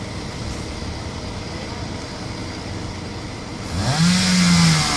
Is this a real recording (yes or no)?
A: yes